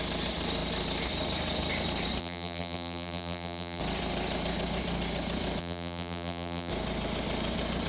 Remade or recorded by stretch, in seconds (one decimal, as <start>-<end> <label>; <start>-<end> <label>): 0.0-2.2 recorded; 2.2-3.8 remade; 3.8-5.6 recorded; 5.6-6.7 remade; 6.7-7.9 recorded